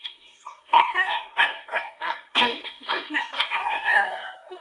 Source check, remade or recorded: remade